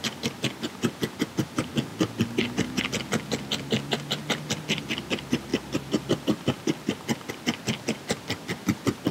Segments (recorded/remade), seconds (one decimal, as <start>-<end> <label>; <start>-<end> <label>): 0.0-5.5 recorded; 5.5-7.3 remade; 7.3-9.1 recorded